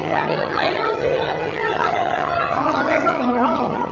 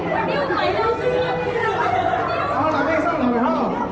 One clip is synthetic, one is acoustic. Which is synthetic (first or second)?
first